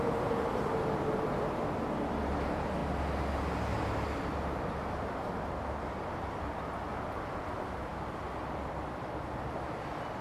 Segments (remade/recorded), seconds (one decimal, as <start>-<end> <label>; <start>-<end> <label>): 0.0-10.2 recorded